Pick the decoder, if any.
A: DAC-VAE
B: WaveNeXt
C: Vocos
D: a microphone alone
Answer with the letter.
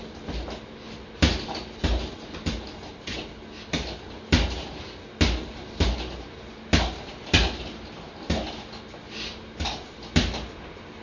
D